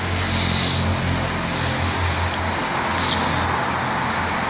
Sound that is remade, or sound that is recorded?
recorded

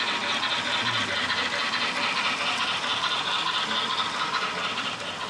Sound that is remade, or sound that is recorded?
recorded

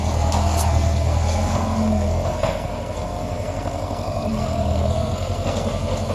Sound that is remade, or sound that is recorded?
remade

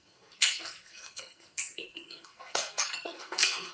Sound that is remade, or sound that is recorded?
remade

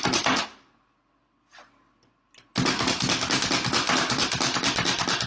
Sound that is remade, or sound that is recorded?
recorded